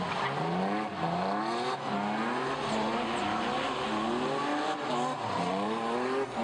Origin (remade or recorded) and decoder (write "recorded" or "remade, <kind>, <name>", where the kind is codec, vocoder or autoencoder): recorded